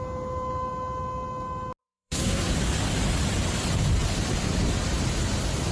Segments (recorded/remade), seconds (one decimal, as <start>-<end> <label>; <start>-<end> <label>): 0.0-1.8 recorded; 1.8-2.5 remade; 2.5-5.7 recorded